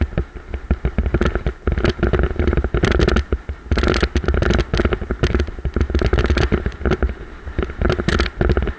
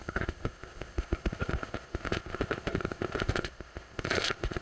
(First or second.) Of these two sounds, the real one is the first